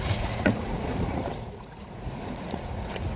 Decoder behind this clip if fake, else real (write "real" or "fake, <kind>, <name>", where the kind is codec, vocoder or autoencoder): fake, vocoder, Vocos